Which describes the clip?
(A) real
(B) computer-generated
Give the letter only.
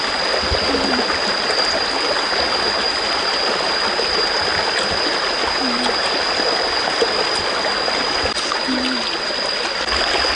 A